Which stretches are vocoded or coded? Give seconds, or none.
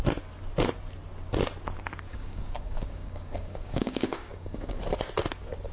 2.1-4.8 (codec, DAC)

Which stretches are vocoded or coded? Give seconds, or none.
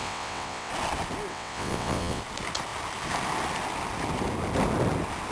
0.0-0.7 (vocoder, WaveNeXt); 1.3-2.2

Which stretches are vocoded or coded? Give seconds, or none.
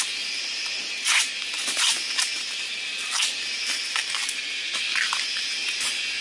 4.2-4.8 (vocoder, BigVGAN v2)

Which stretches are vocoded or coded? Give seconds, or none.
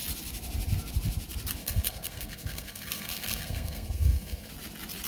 1.6-4.5 (codec, SNAC)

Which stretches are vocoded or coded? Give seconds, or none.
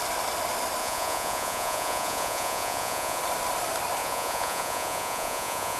0.8-3.2 (vocoder, Vocos); 4.0-5.8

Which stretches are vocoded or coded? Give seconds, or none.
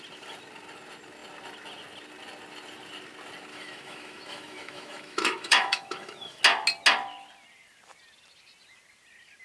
3.5-6.4 (autoencoder, DAC-VAE)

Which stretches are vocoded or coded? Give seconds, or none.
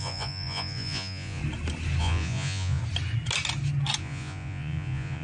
0.0-1.4 (vocoder, Vocos); 2.0-2.8; 4.0-5.2